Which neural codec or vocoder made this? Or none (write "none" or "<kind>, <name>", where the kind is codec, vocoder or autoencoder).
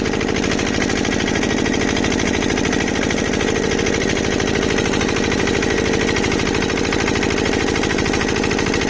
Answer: none